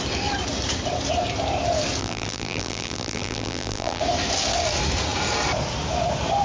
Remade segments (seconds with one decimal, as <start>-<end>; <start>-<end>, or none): 2.0-4.0